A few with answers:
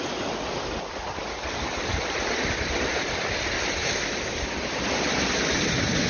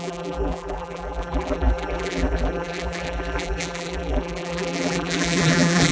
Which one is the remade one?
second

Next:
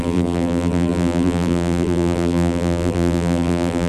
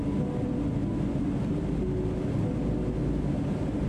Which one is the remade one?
first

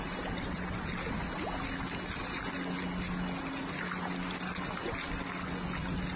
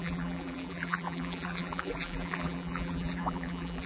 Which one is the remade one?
second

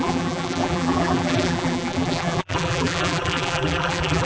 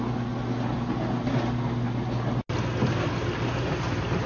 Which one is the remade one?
first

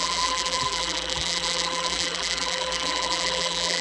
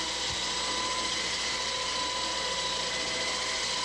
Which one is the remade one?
first